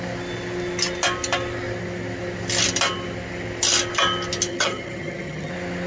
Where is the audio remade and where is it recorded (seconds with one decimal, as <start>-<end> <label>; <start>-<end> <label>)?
0.0-4.5 recorded; 4.5-5.5 remade; 5.5-5.9 recorded